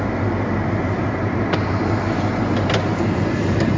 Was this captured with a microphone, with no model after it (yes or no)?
yes